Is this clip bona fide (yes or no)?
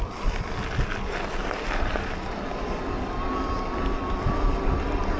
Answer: yes